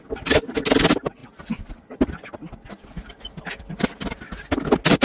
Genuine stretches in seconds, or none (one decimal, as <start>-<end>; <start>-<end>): 0.0-5.0